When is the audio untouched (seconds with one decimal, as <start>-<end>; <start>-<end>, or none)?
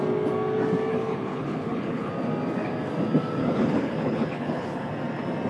0.0-0.9; 2.1-3.4; 4.9-5.5